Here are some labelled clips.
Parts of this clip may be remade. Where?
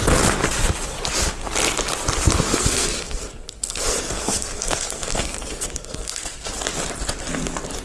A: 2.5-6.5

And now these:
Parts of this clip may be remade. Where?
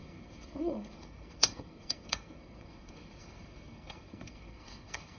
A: 0.0-5.2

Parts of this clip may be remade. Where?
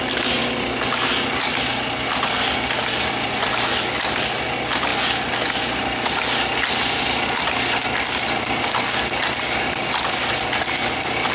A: none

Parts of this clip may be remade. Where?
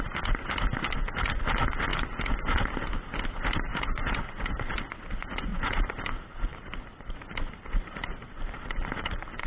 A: 3.7-4.8; 5.5-9.5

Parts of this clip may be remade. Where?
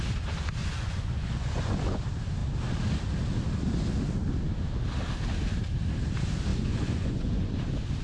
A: 0.6-2.0; 6.5-7.5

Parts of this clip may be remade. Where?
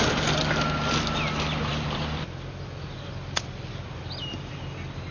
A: 1.7-5.1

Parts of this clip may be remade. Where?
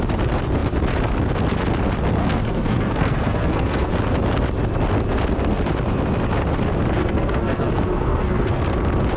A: 2.2-3.9; 7.0-8.6